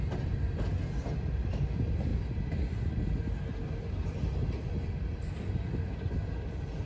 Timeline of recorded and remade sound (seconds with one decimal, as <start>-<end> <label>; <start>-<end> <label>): 0.0-6.9 recorded